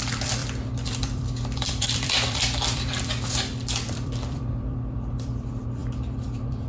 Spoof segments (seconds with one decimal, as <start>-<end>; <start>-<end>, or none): 0.0-6.7